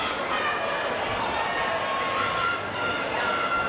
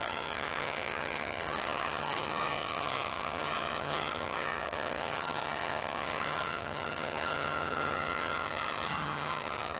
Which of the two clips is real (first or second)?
first